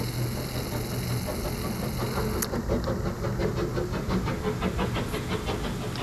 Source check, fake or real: real